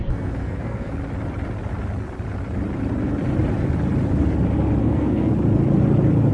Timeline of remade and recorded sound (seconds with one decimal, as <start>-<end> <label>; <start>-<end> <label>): 0.0-1.0 remade; 1.0-4.8 recorded; 4.8-5.3 remade; 5.3-6.3 recorded

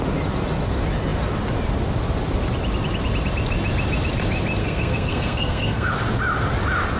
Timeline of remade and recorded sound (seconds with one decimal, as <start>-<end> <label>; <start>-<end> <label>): 0.0-4.6 recorded; 4.6-5.9 remade; 5.9-7.0 recorded

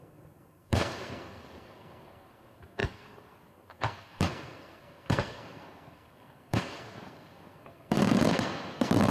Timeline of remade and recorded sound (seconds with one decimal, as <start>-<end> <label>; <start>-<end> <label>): 0.0-9.1 remade

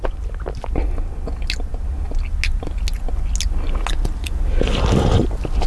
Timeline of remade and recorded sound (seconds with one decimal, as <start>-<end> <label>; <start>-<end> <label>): 0.0-5.7 recorded

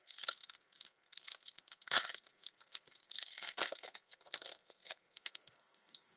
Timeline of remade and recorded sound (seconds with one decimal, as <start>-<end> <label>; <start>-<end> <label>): 0.0-6.2 remade

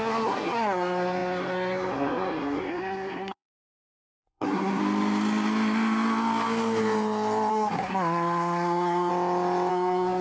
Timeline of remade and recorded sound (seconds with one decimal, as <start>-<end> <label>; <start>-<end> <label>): 0.0-4.8 remade; 4.8-7.5 recorded; 7.5-9.1 remade; 9.1-9.7 recorded; 9.7-10.2 remade

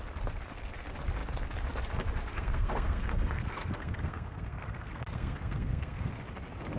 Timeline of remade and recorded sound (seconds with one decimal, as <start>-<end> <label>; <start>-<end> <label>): 0.0-2.3 recorded; 2.3-6.1 remade; 6.1-6.8 recorded

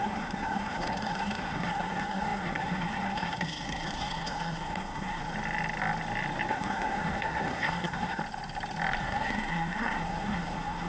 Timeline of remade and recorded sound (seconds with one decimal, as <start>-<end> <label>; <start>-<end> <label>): 0.0-5.2 remade; 5.2-6.5 recorded; 6.5-8.2 remade; 8.2-9.0 recorded; 9.0-10.9 remade